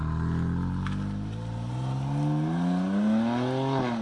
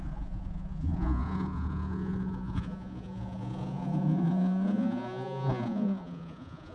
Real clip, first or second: first